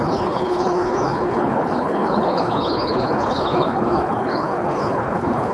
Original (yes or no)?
no